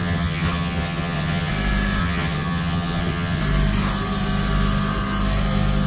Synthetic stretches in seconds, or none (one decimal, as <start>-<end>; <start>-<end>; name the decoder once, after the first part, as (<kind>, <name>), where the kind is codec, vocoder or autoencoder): 0.0-1.5 (vocoder, HiFi-GAN); 2.0-3.4